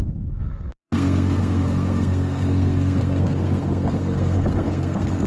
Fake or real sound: fake